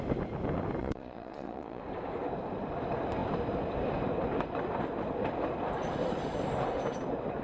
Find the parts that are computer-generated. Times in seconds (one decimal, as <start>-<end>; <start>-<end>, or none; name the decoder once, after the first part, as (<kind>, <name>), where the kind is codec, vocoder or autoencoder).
0.8-1.8 (vocoder, Vocos)

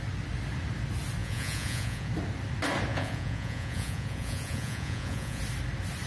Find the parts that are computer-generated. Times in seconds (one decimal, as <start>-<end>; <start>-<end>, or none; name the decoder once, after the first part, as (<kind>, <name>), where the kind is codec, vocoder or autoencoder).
1.2-2.1 (vocoder, Vocos); 2.9-5.4

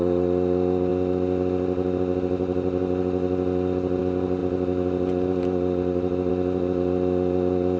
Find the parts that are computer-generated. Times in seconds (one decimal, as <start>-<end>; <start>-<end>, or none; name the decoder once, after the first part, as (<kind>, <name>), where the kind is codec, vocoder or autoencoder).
none

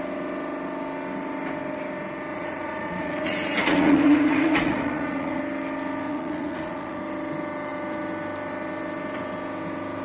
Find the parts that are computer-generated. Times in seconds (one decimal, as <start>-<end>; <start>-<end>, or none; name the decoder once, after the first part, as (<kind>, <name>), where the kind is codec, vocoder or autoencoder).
2.3-5.4 (vocoder, Vocos); 6.1-7.0

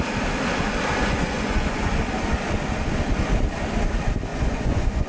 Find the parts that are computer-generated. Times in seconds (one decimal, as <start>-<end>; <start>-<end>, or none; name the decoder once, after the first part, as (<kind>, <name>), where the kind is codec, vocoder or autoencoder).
1.0-1.9 (vocoder, Vocos); 4.3-5.1

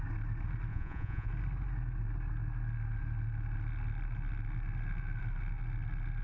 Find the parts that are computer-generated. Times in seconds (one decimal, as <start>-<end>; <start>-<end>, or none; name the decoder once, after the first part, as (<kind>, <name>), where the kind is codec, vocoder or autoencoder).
0.7-1.3 (vocoder, Vocos)

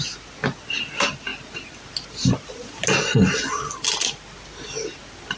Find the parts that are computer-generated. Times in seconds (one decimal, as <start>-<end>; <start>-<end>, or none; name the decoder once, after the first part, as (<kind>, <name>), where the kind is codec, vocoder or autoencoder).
none